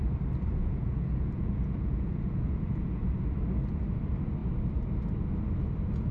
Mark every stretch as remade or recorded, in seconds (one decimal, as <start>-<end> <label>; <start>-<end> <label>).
0.0-0.6 recorded; 0.6-3.0 remade; 3.0-6.1 recorded

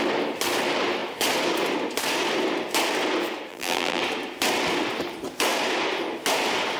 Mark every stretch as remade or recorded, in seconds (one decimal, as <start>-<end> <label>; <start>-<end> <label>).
0.0-3.5 recorded; 3.5-4.0 remade; 4.0-6.8 recorded

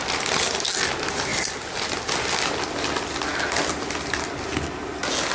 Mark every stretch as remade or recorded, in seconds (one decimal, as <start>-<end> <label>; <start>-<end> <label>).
0.0-5.3 recorded

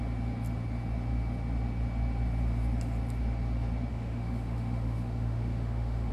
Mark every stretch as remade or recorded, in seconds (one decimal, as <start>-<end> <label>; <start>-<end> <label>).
0.0-3.9 recorded; 3.9-6.1 remade

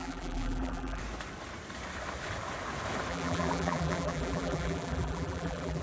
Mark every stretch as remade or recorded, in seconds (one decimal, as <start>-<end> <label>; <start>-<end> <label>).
0.0-1.0 remade; 1.0-3.1 recorded; 3.1-5.8 remade

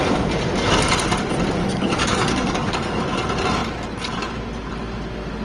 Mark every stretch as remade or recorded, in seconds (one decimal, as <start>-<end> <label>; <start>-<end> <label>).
0.0-1.6 recorded; 1.6-3.0 remade; 3.0-5.4 recorded

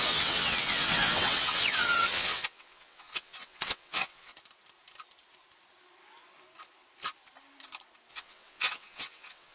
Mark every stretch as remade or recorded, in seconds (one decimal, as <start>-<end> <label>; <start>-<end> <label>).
0.0-4.3 remade; 4.3-8.1 recorded; 8.1-9.5 remade